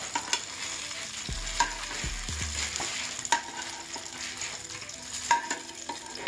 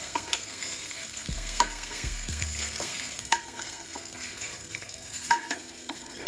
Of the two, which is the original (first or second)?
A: first